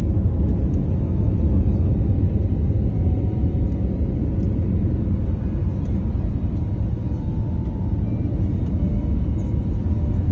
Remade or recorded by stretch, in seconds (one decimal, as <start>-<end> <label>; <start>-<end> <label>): 0.0-5.6 recorded; 5.6-6.5 remade; 6.5-10.3 recorded